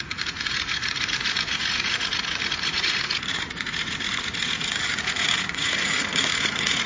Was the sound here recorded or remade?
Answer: remade